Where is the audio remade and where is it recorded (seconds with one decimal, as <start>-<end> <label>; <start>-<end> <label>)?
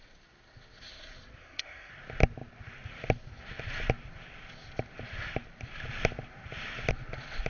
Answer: 0.0-1.4 recorded; 1.4-1.9 remade; 1.9-7.5 recorded